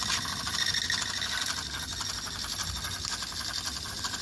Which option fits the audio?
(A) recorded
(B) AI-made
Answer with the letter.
A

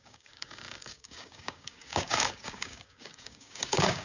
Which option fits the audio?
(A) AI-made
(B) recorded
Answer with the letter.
A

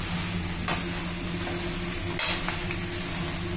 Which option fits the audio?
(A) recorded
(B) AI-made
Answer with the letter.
A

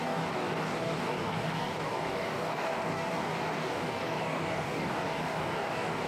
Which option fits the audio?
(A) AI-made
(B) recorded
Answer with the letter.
A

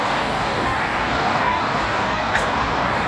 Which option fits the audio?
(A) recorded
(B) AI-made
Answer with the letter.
B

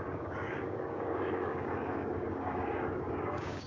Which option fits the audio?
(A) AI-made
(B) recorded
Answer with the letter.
A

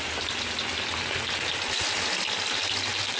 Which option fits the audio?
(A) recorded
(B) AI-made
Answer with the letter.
A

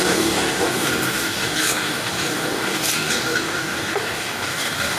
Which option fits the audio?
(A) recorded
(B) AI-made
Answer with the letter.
B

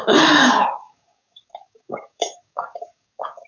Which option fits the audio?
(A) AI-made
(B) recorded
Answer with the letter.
A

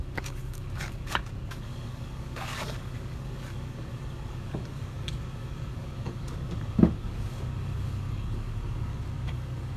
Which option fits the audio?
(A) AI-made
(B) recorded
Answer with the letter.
A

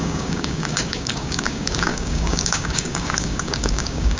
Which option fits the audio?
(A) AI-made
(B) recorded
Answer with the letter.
A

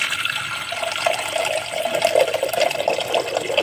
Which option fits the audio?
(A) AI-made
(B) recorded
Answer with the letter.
B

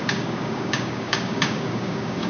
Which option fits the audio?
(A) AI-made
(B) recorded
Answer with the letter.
A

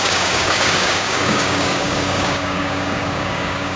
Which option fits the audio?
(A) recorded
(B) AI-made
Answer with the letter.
B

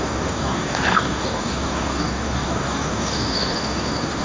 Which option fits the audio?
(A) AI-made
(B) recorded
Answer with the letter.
A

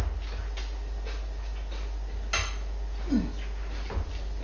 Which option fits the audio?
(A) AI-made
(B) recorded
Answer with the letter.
B